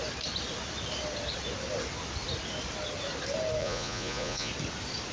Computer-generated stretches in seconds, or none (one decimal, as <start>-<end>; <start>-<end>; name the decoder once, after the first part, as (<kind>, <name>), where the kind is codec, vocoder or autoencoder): 3.6-4.5 (vocoder, Vocos)

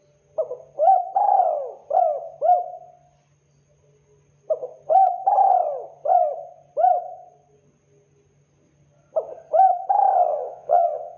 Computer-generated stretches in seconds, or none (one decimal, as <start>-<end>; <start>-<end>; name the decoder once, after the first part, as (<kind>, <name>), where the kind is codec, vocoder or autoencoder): 10.3-11.2 (vocoder, Vocos)

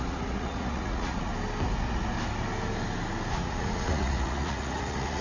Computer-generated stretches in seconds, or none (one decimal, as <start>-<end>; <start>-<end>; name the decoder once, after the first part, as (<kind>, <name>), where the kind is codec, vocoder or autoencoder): 0.0-1.3 (vocoder, Vocos); 3.3-5.2

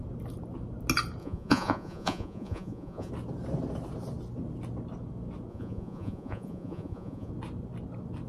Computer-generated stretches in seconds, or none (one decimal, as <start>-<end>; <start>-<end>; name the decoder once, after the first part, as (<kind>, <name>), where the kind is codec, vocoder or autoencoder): 1.2-3.1 (vocoder, Vocos); 5.5-7.3